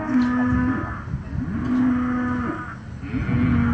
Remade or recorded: recorded